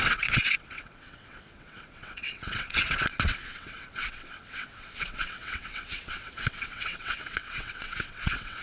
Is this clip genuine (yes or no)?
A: no